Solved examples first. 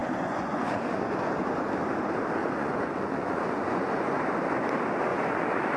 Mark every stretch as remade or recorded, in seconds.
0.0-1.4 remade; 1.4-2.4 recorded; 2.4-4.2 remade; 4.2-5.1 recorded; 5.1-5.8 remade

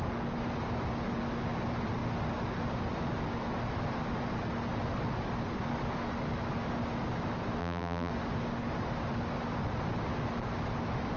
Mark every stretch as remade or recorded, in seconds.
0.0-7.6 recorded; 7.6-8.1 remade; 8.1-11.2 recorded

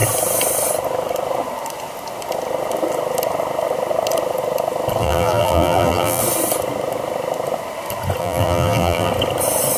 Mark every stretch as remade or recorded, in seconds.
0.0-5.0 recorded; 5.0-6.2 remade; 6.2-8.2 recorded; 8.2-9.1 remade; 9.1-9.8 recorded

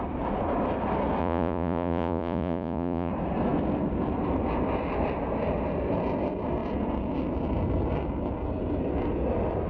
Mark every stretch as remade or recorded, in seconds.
0.0-1.2 recorded; 1.2-3.1 remade; 3.1-9.7 recorded